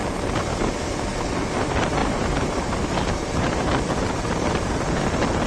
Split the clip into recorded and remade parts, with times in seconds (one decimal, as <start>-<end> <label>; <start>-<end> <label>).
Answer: 0.0-2.0 recorded; 2.0-4.2 remade; 4.2-5.5 recorded